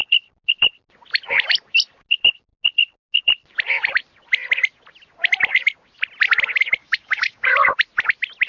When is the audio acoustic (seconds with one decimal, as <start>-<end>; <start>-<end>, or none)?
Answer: 0.0-6.8; 7.5-8.5